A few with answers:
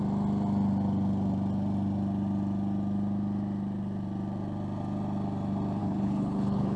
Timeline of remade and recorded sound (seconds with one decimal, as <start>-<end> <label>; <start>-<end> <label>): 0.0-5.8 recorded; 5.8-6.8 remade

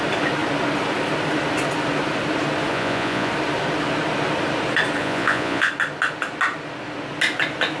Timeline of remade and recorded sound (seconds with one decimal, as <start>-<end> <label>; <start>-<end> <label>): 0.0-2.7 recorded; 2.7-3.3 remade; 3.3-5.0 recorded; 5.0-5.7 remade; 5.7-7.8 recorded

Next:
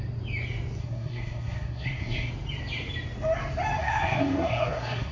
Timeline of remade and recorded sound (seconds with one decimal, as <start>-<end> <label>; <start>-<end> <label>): 0.0-0.8 recorded; 0.8-2.3 remade; 2.3-3.8 recorded; 3.8-5.1 remade

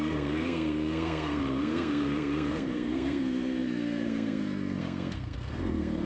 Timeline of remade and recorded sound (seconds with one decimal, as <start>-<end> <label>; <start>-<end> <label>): 0.0-6.1 remade